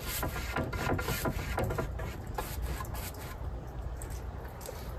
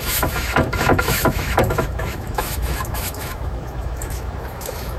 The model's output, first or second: second